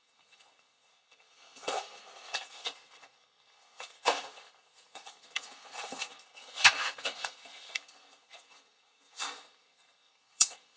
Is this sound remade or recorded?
remade